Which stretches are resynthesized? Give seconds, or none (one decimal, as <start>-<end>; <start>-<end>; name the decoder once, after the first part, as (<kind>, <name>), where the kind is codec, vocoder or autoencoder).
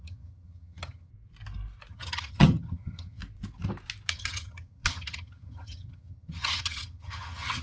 0.0-1.1 (vocoder, HiFi-GAN); 1.9-3.2; 4.1-7.6